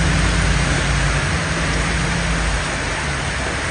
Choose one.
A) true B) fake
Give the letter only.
A